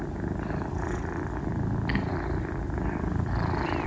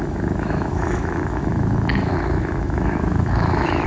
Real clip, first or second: first